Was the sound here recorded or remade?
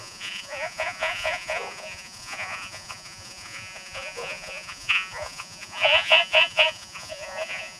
remade